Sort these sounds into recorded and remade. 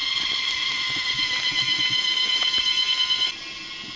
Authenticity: recorded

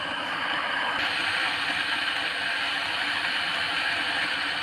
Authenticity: recorded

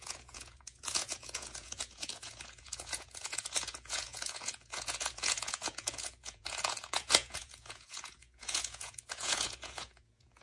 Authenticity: remade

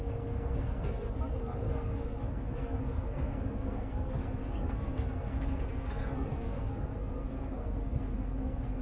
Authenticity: remade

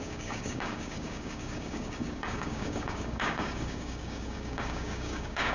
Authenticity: remade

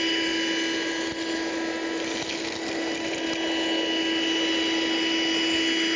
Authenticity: recorded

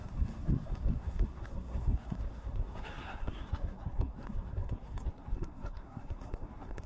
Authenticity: remade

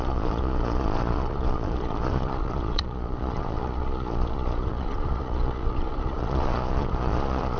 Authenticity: remade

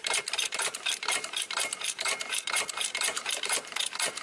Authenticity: remade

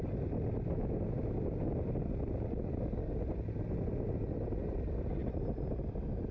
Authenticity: recorded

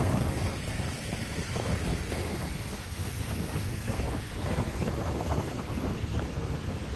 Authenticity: remade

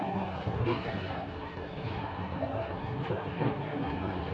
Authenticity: remade